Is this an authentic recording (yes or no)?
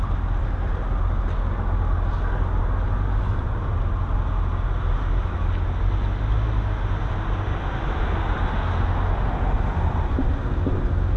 yes